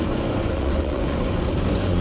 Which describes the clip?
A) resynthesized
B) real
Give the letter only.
A